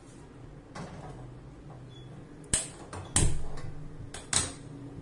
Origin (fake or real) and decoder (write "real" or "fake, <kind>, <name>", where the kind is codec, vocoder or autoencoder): real